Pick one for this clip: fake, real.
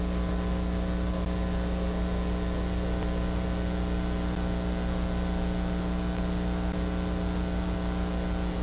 real